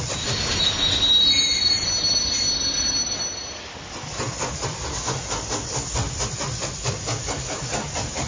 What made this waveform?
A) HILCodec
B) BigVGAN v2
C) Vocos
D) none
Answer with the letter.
D